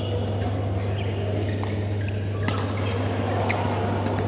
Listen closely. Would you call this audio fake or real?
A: real